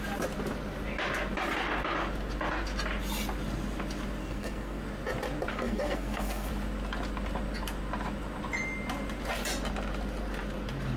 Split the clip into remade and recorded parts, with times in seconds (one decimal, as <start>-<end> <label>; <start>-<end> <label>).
0.0-4.2 recorded; 4.2-4.8 remade; 4.8-5.5 recorded; 5.5-6.5 remade; 6.5-11.0 recorded